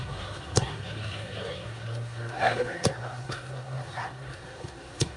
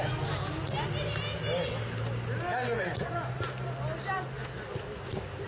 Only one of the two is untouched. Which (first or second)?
second